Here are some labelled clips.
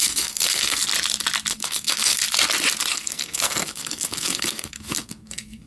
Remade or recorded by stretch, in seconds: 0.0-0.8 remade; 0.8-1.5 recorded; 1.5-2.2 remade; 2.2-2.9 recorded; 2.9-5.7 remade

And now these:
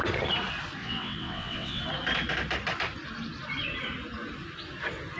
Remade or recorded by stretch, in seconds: 0.0-0.8 recorded; 0.8-1.8 remade; 1.8-5.2 recorded

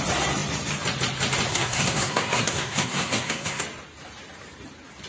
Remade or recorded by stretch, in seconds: 0.0-1.5 recorded; 1.5-3.6 remade; 3.6-5.1 recorded

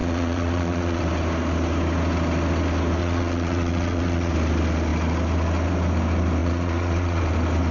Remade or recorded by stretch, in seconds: 0.0-1.0 remade; 1.0-3.0 recorded; 3.0-4.3 remade; 4.3-6.4 recorded; 6.4-7.2 remade; 7.2-7.7 recorded

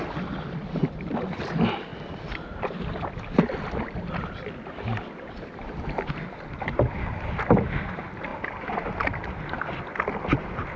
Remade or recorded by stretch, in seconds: 0.0-10.8 recorded

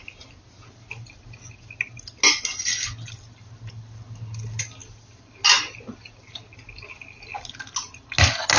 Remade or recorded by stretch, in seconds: 0.0-8.6 recorded

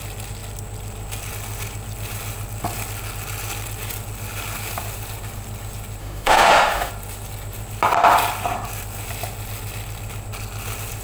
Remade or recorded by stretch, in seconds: 0.0-6.0 recorded; 6.0-6.9 remade; 6.9-11.0 recorded